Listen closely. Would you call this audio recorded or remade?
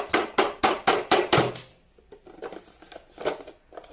recorded